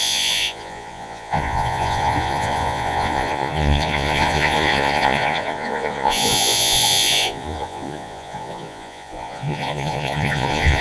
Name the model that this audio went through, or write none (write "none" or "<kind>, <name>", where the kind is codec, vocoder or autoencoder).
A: vocoder, Vocos